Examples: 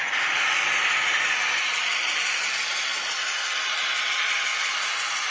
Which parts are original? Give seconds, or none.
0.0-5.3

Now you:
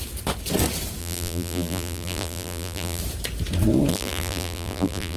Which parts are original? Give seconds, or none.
0.0-1.0; 3.0-3.9

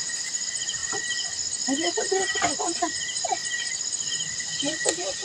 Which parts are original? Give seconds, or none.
0.8-2.6; 3.4-4.3